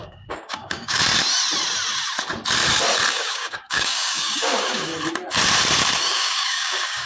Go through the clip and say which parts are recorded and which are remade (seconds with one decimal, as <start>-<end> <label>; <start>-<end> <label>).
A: 0.0-1.0 remade; 1.0-3.1 recorded; 3.1-4.9 remade; 4.9-6.1 recorded; 6.1-7.1 remade